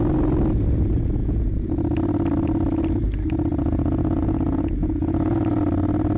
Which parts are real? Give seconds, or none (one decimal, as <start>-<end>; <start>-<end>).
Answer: 0.0-1.2; 1.7-3.6; 5.6-6.2